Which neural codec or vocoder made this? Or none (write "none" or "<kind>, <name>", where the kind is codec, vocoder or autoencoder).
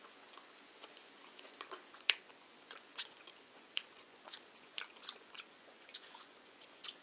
vocoder, Vocos